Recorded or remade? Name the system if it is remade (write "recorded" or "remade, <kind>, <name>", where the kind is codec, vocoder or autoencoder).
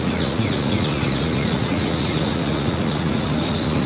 remade, vocoder, Vocos